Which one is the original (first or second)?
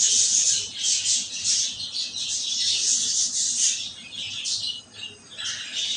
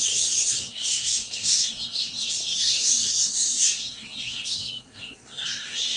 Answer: first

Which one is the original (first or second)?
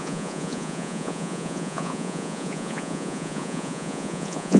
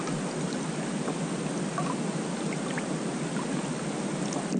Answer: second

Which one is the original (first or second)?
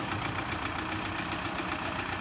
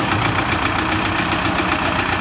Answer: second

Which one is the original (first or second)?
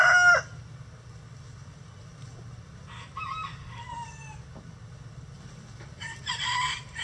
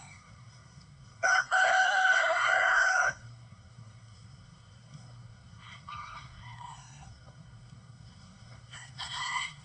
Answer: first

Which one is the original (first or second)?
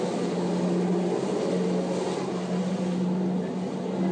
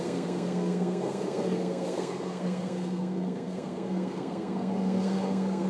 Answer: first